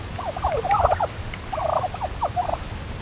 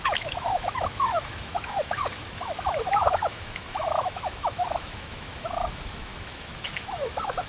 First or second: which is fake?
second